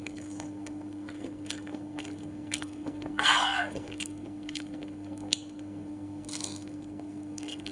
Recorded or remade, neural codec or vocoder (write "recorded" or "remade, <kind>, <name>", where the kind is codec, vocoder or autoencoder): remade, codec, SNAC